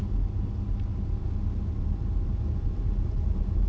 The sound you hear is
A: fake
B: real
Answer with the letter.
B